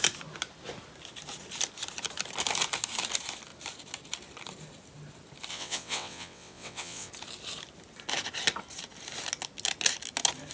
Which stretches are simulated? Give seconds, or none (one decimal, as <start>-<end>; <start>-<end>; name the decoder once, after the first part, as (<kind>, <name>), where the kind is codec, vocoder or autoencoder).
5.5-7.1 (vocoder, WaveNeXt)